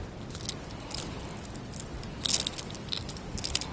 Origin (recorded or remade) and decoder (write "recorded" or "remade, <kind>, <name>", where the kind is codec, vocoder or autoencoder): recorded